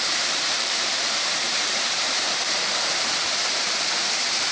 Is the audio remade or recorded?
remade